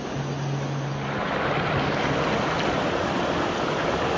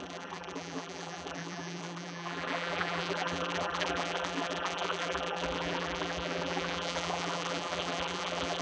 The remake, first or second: second